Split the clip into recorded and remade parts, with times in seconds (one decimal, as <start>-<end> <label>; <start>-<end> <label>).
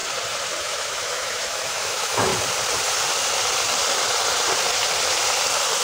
0.0-0.6 recorded; 0.6-2.3 remade; 2.3-5.8 recorded